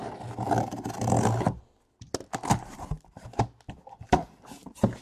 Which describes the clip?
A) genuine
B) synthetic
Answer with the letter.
A